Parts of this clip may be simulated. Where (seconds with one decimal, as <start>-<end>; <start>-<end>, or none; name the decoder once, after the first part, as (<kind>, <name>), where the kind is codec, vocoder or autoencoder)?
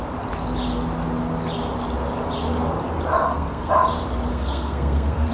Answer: 3.2-3.7 (codec, SNAC); 4.3-5.3